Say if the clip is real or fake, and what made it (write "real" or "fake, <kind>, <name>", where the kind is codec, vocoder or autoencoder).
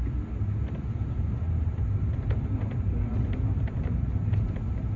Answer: real